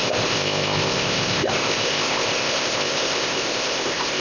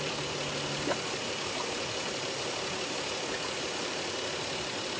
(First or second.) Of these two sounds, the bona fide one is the second